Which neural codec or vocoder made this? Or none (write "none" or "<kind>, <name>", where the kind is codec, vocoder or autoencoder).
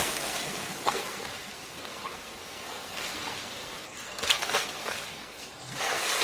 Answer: codec, SNAC